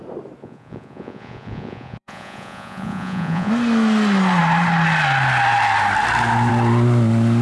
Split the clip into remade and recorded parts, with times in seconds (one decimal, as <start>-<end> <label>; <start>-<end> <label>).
0.0-0.4 recorded; 0.4-3.5 remade; 3.5-7.4 recorded